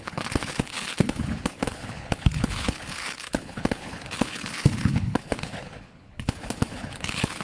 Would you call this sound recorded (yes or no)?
no